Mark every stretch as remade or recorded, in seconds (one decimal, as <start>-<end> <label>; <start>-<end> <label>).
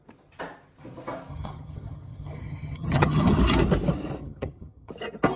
0.0-1.3 recorded; 1.3-3.4 remade; 3.4-4.2 recorded; 4.2-4.9 remade; 4.9-5.4 recorded